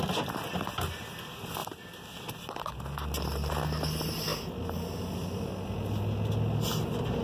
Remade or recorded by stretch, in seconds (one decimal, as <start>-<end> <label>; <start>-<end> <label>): 0.0-7.2 recorded